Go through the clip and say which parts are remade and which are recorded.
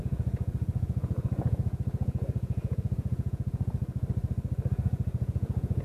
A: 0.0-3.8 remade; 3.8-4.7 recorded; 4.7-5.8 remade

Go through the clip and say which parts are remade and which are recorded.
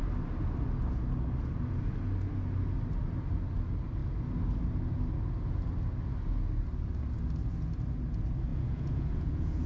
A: 0.0-8.5 recorded; 8.5-9.7 remade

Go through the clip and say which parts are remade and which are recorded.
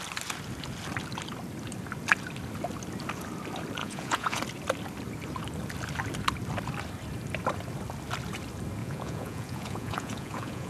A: 0.0-3.8 recorded; 3.8-4.4 remade; 4.4-8.8 recorded; 8.8-10.7 remade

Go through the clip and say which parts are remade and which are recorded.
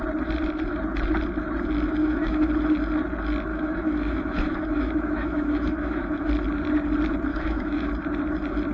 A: 0.0-2.0 recorded; 2.0-2.5 remade; 2.5-3.5 recorded; 3.5-6.3 remade; 6.3-7.3 recorded; 7.3-7.9 remade; 7.9-8.7 recorded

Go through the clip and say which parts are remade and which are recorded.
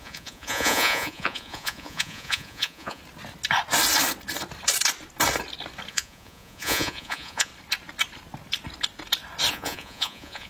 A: 0.0-3.0 remade; 3.0-5.9 recorded; 5.9-7.5 remade; 7.5-9.5 recorded; 9.5-10.5 remade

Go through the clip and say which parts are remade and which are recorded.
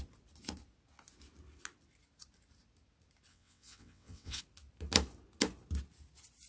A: 0.0-3.3 recorded; 3.3-4.4 remade; 4.4-6.5 recorded